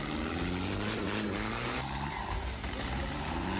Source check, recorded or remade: recorded